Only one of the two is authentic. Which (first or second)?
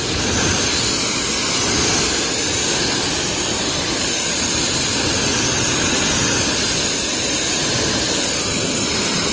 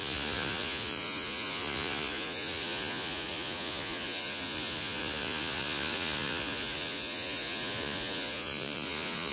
first